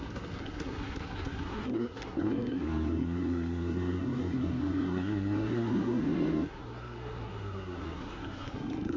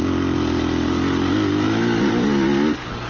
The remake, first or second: first